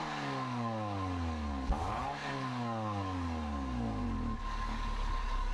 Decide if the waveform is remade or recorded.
remade